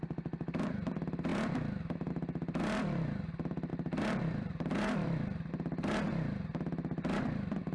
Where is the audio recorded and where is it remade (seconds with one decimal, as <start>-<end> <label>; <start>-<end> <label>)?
0.0-3.7 recorded; 3.7-5.5 remade; 5.5-7.7 recorded